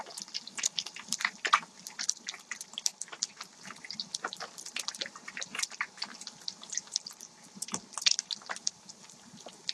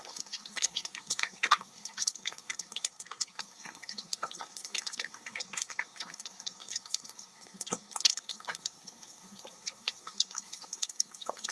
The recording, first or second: first